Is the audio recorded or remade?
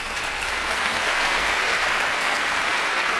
remade